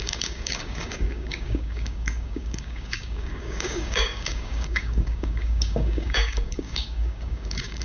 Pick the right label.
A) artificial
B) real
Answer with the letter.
A